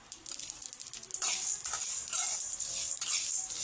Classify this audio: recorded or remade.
recorded